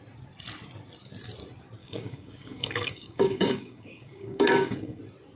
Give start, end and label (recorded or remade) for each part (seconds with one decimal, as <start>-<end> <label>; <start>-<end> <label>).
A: 0.0-1.8 recorded; 1.8-5.0 remade; 5.0-5.4 recorded